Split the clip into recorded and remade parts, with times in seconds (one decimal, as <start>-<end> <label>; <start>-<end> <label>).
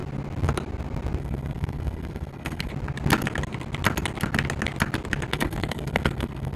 0.0-1.2 recorded; 1.2-2.7 remade; 2.7-5.3 recorded; 5.3-6.6 remade